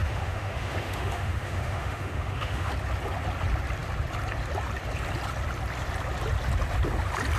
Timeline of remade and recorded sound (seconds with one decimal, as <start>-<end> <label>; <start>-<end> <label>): 0.0-2.7 remade; 2.7-7.4 recorded